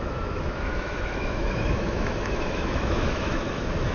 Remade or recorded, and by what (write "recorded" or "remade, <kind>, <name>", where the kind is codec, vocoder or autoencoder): remade, autoencoder, DAC-VAE